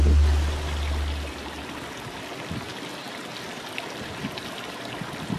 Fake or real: real